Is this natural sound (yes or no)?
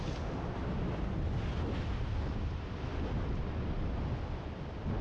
yes